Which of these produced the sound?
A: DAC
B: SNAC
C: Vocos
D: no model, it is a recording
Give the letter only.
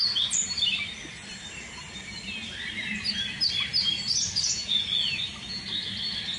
D